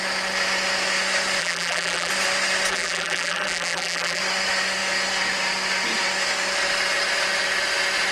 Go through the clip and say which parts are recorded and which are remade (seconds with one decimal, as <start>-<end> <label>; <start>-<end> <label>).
0.0-1.4 recorded; 1.4-2.1 remade; 2.1-2.7 recorded; 2.7-4.2 remade; 4.2-8.1 recorded